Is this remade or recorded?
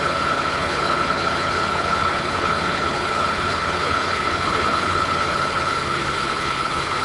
remade